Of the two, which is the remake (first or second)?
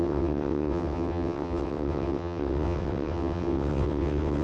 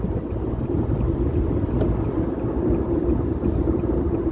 first